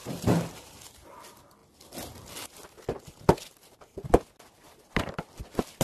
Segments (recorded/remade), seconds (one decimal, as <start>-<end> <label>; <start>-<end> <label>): 0.0-0.8 remade; 0.8-5.8 recorded